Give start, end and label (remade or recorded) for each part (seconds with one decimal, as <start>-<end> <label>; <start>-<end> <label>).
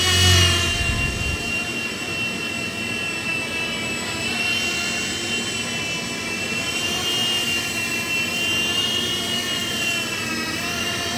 0.0-11.2 recorded